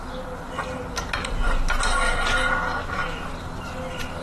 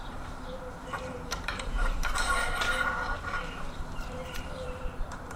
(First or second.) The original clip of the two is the first